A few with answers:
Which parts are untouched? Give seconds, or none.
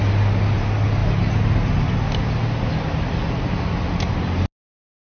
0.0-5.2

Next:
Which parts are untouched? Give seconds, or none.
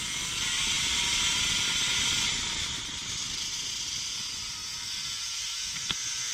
0.0-6.3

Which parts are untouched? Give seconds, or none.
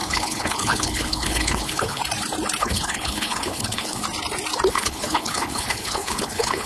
2.0-2.6; 4.0-4.7